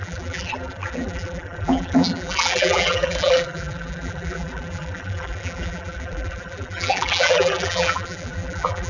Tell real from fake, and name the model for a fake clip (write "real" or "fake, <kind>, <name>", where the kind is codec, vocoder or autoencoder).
fake, vocoder, BigVGAN v2